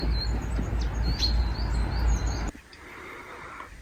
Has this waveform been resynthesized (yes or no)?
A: no